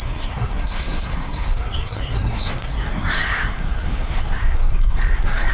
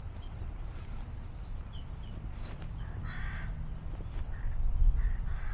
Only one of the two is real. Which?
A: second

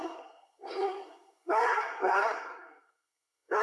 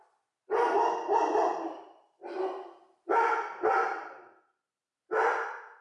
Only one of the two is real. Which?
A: second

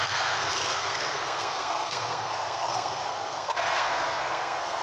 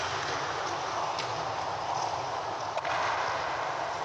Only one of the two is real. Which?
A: second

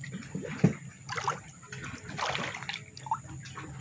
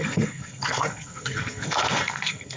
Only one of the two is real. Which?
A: first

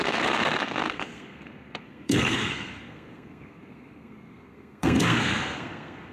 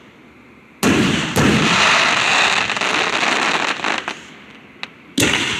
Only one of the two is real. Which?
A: second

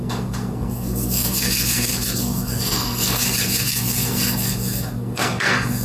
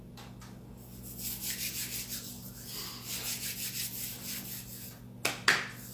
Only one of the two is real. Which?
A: second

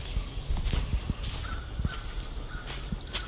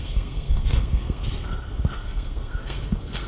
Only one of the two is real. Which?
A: first